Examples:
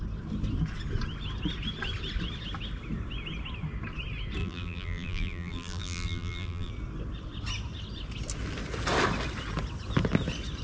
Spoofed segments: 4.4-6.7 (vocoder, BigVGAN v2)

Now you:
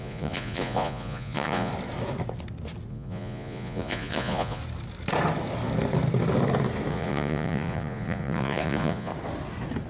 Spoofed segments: 0.0-1.7 (vocoder, Vocos); 2.9-4.6; 6.9-9.1

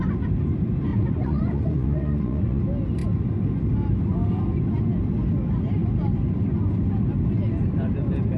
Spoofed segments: 0.9-2.6 (vocoder, Vocos)

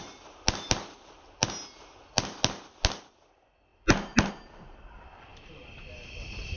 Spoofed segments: none

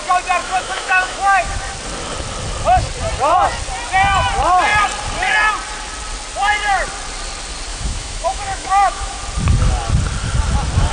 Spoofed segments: 0.4-1.5 (autoencoder, DAC-VAE); 7.7-9.2

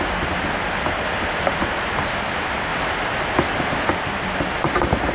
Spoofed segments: none